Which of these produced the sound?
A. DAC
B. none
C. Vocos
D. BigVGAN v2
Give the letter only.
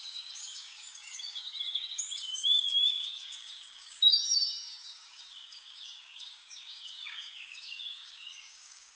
A